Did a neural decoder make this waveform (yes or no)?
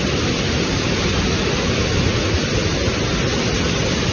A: no